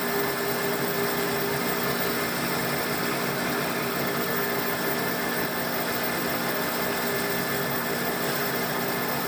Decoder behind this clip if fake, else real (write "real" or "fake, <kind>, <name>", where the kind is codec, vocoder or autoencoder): real